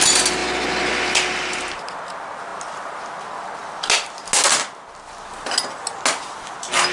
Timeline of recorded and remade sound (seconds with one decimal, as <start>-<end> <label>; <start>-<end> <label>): 0.0-6.9 recorded

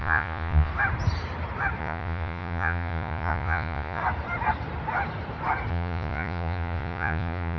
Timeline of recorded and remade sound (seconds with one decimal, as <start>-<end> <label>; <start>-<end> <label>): 0.0-0.7 remade; 0.7-1.8 recorded; 1.8-4.0 remade; 4.0-5.7 recorded; 5.7-7.6 remade

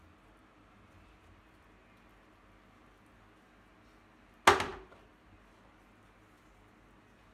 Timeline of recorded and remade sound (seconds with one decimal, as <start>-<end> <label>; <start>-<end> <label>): 0.0-7.3 recorded

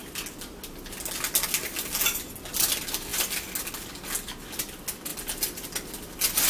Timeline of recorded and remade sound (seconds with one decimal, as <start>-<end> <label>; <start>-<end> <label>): 0.0-6.5 recorded

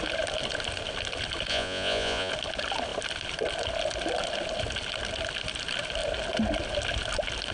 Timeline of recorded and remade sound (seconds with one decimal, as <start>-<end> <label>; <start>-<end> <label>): 0.0-1.5 recorded; 1.5-2.3 remade; 2.3-7.5 recorded